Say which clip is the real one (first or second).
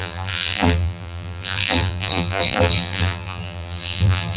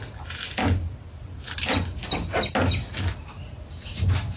second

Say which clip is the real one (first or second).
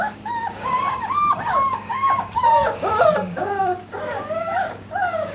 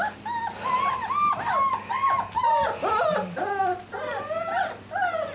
second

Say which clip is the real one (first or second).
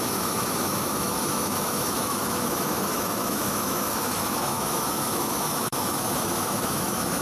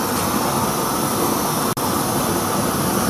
second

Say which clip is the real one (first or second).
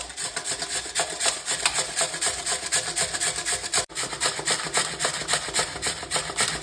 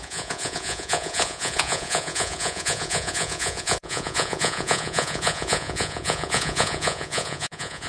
first